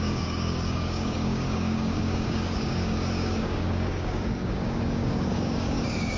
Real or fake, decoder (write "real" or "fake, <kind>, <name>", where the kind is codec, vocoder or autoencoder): fake, codec, DAC